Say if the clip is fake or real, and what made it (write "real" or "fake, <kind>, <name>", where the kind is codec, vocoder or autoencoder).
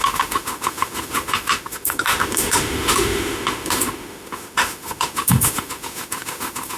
fake, autoencoder, DAC-VAE